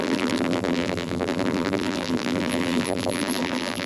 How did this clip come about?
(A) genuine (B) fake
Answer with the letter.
B